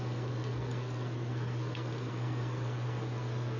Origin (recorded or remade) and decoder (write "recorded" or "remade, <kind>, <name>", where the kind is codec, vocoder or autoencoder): remade, codec, SNAC